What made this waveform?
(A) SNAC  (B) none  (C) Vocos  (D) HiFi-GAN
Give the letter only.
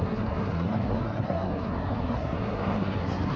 A